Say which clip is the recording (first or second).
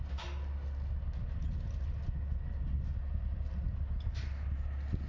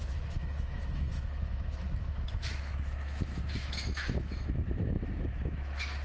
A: first